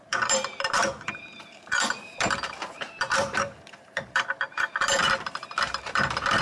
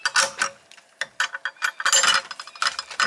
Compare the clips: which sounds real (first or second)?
second